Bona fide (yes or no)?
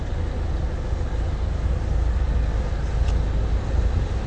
yes